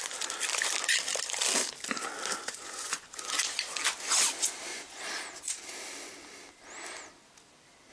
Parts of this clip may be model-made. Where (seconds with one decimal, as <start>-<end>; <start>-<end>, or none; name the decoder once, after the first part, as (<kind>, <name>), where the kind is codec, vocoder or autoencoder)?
2.3-3.3 (vocoder, Vocos); 4.7-5.2